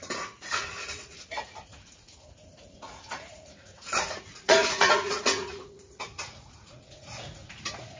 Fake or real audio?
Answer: fake